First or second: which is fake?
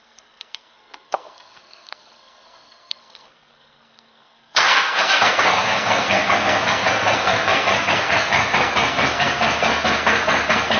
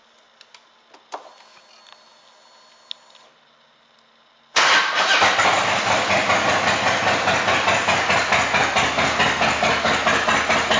first